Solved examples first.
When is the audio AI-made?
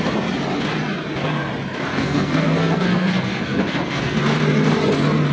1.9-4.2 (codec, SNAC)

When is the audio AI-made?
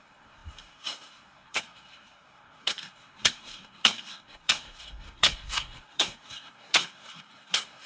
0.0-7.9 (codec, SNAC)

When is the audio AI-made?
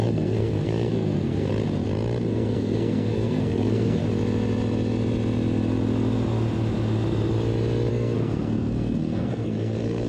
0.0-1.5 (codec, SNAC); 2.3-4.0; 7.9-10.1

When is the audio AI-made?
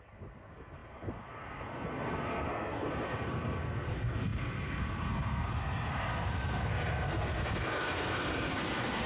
0.0-9.1 (codec, SNAC)